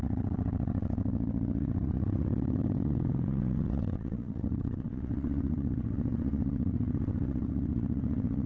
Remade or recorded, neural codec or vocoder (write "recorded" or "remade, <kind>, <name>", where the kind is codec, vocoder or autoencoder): remade, vocoder, WaveNeXt